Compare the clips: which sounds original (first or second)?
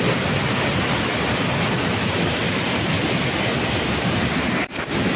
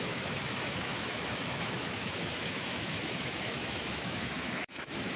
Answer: first